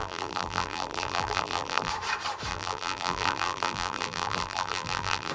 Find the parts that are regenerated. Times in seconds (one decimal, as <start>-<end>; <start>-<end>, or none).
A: 0.0-1.9; 2.5-5.3